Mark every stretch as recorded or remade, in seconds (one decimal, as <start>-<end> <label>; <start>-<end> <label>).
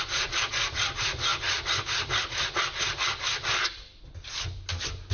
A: 0.0-5.1 recorded